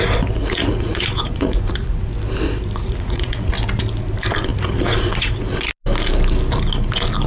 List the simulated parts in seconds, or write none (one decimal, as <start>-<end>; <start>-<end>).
0.4-2.1; 2.8-3.5; 4.5-5.6

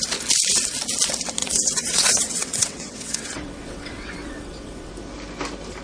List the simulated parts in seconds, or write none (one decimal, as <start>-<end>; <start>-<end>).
1.4-4.9